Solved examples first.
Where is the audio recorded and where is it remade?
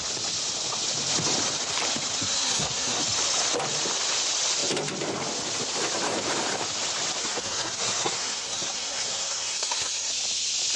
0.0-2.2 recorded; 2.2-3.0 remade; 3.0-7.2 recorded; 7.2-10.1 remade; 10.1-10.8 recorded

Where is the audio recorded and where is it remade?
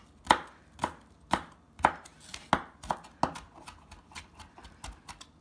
0.0-5.4 recorded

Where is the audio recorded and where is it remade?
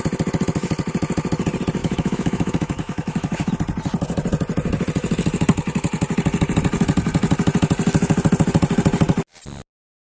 0.0-1.8 recorded; 1.8-3.5 remade; 3.5-10.2 recorded